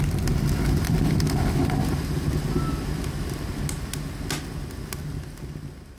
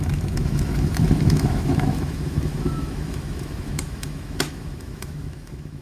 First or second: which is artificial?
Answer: second